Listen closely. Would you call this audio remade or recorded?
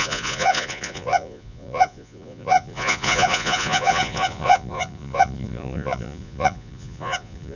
remade